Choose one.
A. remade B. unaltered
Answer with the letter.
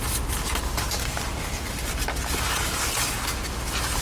B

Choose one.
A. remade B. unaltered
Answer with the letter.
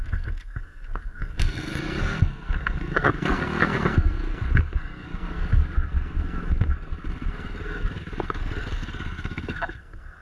A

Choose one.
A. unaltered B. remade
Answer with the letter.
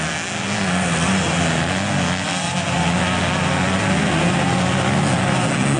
A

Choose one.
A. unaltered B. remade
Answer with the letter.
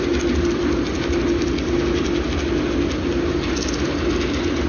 A